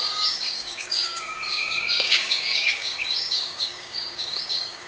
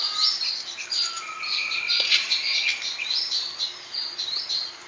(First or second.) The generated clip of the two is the first